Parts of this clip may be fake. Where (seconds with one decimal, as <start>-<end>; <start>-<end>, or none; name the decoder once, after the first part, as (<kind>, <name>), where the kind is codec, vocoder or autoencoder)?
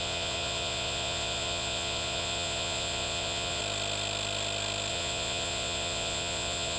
0.0-3.6 (vocoder, Vocos); 4.9-6.8